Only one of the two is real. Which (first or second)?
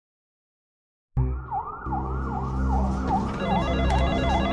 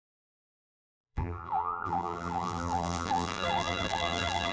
first